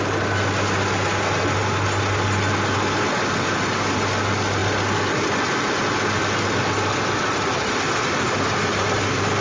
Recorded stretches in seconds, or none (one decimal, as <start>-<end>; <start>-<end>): 0.0-9.4